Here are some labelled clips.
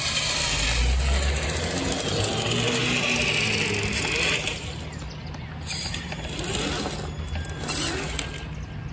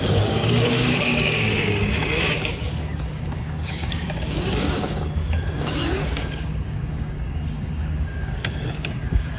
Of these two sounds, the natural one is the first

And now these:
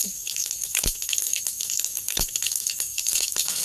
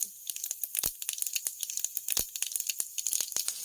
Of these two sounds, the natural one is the second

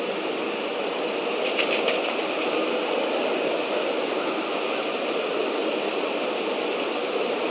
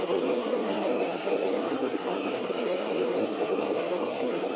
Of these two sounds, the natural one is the first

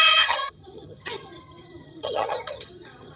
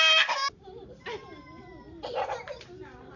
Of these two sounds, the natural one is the second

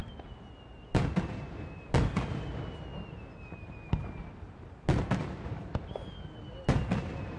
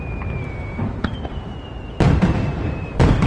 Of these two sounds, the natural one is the first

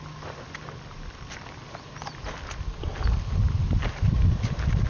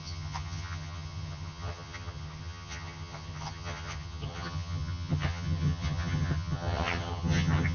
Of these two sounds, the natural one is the first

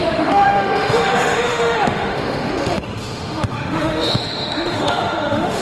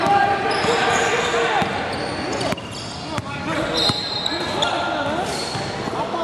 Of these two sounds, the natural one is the second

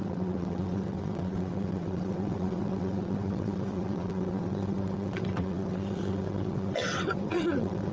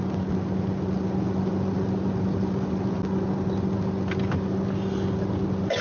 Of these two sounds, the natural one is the second